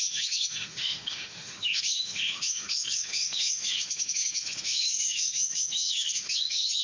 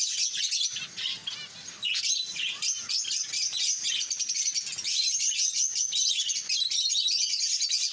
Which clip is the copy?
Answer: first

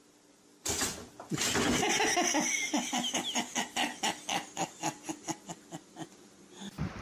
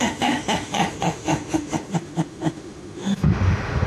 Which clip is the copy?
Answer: second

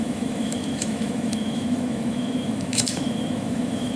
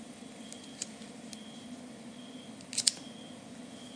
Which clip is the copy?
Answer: first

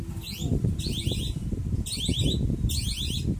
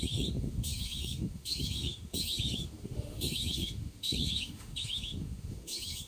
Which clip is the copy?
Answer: second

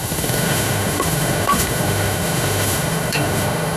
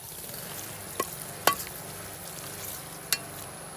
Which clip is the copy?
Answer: first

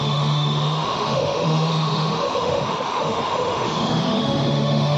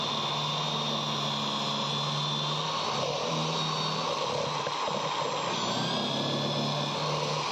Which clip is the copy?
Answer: first